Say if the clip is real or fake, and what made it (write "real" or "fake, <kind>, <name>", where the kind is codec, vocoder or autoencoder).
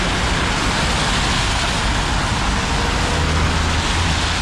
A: real